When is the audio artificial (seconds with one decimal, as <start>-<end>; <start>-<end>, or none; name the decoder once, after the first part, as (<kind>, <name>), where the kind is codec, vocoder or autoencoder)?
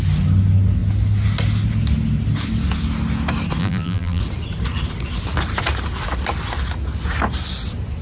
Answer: 3.6-4.2 (vocoder, BigVGAN v2)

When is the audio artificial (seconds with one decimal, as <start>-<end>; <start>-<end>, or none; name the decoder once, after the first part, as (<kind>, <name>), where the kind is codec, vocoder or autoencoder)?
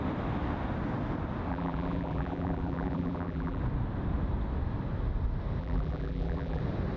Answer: 1.5-3.6 (vocoder, BigVGAN v2); 5.6-6.6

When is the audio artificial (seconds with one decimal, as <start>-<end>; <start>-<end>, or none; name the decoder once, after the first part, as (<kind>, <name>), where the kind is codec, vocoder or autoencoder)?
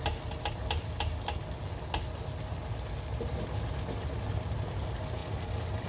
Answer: none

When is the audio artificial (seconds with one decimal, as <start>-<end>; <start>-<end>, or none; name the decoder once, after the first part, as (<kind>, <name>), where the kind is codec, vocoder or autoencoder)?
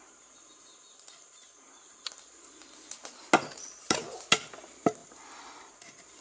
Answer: none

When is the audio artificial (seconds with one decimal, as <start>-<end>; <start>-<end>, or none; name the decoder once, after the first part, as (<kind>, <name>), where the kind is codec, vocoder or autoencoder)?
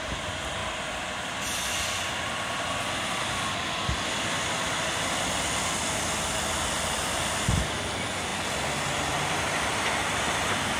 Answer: none